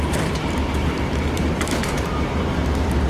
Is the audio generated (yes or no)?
yes